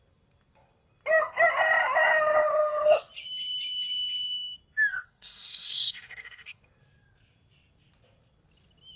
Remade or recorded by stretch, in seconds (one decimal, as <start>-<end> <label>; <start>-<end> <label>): 0.0-4.9 recorded; 4.9-6.6 remade; 6.6-9.0 recorded